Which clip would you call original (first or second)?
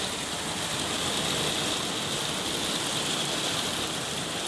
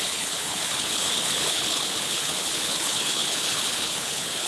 first